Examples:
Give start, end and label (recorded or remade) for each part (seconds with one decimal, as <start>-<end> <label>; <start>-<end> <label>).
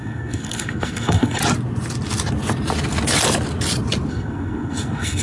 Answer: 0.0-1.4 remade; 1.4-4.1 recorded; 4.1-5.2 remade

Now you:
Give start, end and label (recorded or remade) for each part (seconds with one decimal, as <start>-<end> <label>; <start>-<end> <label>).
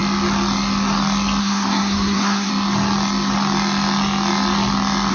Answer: 0.0-1.4 recorded; 1.4-2.5 remade; 2.5-5.1 recorded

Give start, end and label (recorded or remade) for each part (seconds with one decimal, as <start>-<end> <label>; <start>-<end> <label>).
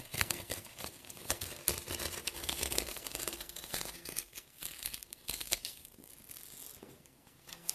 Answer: 0.0-1.6 remade; 1.6-2.2 recorded; 2.2-6.1 remade; 6.1-6.8 recorded; 6.8-7.7 remade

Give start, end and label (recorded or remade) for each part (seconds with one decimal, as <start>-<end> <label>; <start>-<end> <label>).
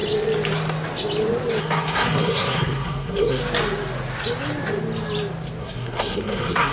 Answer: 0.0-1.6 recorded; 1.6-3.4 remade; 3.4-5.6 recorded; 5.6-6.7 remade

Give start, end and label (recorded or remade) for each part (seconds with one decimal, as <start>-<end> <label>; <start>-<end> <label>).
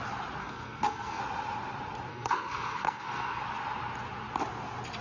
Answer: 0.0-0.4 recorded; 0.4-1.2 remade; 1.2-2.1 recorded; 2.1-3.4 remade; 3.4-5.0 recorded